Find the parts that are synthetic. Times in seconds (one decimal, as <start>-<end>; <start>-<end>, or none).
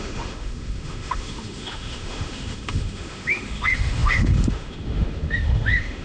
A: 0.0-6.0